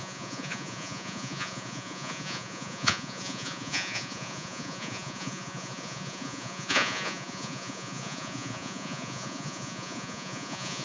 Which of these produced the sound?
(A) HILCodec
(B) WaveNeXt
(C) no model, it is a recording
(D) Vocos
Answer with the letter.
D